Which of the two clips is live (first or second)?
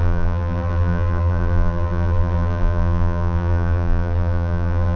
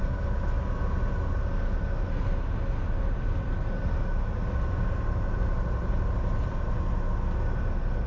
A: second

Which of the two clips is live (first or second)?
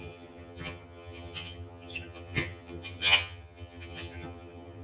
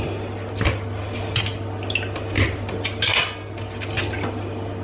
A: second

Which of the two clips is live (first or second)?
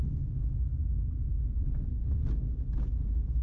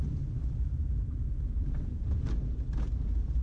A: first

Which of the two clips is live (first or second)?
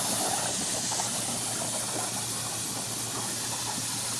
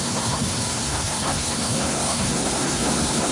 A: first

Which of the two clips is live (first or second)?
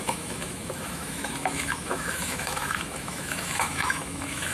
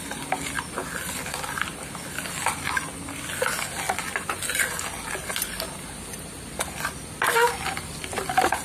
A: second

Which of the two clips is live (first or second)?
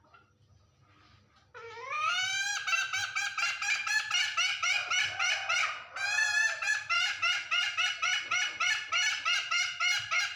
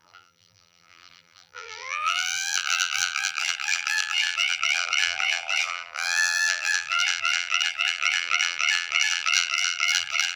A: first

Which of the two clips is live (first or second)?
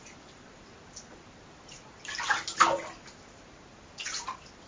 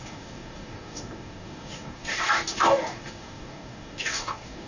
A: first